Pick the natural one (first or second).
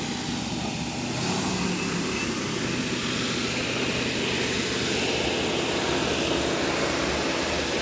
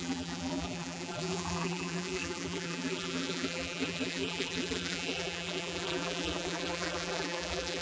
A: first